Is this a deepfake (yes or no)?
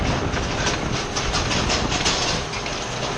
no